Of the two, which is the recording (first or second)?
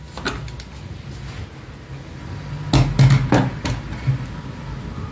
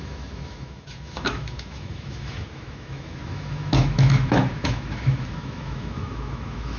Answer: first